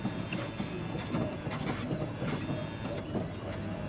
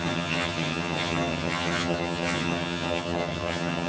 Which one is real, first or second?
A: first